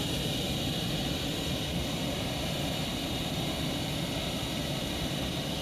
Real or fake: fake